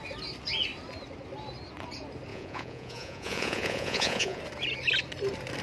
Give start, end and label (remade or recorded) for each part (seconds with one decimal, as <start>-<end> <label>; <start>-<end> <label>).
0.0-2.3 recorded; 2.3-4.4 remade; 4.4-5.6 recorded